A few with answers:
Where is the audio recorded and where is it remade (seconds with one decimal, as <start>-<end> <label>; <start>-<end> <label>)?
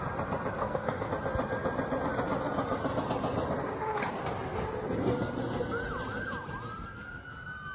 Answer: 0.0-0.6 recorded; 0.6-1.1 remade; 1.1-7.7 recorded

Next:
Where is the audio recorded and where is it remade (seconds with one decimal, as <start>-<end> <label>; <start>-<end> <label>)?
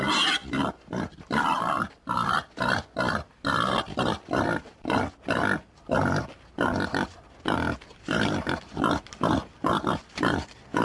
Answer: 0.0-10.8 recorded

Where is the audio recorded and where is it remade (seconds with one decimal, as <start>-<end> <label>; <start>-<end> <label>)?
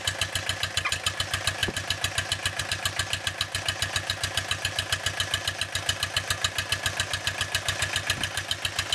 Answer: 0.0-8.9 recorded